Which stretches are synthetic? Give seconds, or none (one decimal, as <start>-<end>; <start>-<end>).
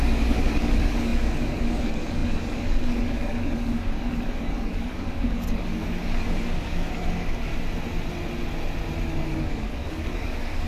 0.0-7.5; 9.1-10.7